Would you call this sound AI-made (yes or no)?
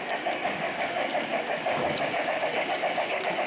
yes